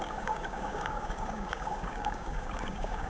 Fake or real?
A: fake